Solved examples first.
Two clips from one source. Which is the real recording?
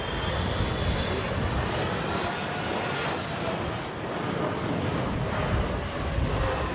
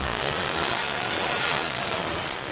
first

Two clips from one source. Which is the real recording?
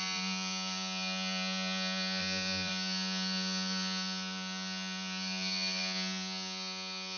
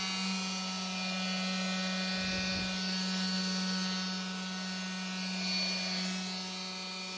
second